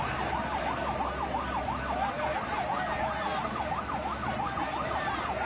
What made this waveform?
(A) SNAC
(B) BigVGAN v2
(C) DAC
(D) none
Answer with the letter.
D